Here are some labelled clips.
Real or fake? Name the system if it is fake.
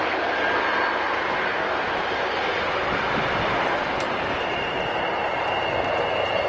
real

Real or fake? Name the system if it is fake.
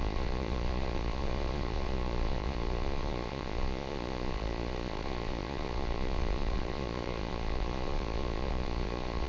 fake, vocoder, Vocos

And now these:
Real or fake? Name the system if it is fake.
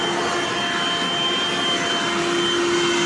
real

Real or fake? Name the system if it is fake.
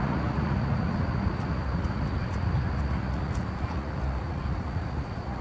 fake, vocoder, Vocos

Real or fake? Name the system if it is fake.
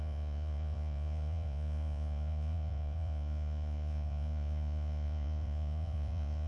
fake, vocoder, Vocos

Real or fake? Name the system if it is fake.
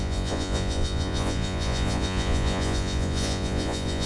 fake, vocoder, Vocos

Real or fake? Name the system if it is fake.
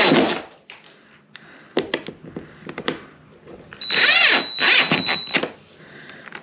real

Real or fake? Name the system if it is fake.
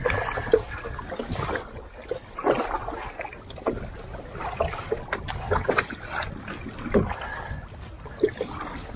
real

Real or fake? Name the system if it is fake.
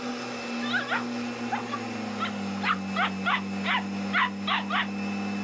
real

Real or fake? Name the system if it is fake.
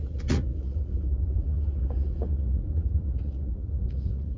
fake, vocoder, Vocos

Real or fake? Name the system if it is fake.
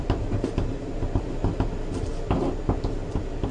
real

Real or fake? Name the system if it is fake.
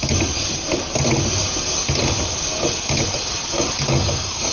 real